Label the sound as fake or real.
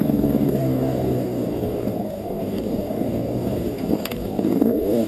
fake